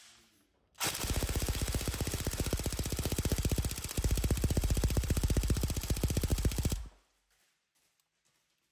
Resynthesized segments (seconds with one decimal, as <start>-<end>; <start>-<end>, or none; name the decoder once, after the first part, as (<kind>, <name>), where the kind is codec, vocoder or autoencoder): none